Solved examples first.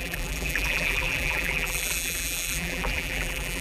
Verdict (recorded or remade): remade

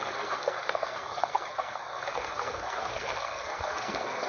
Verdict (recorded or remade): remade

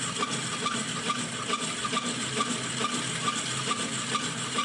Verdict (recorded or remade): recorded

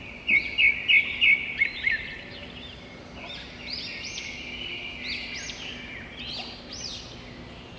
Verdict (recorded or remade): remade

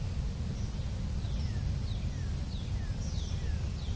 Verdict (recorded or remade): recorded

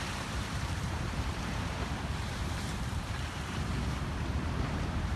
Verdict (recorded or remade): remade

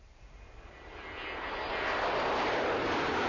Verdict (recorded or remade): recorded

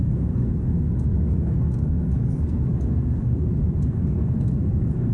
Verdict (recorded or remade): remade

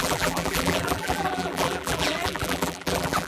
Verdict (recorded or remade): remade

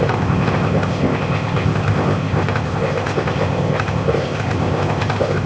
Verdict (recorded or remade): remade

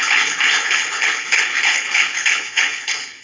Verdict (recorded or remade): remade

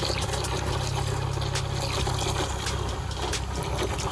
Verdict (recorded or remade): recorded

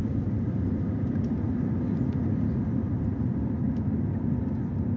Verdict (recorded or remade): recorded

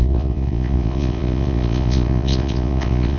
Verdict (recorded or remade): remade